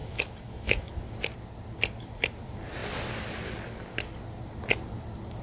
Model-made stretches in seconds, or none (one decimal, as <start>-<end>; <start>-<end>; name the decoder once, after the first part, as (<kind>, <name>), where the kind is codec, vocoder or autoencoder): 0.0-0.9 (autoencoder, DAC-VAE)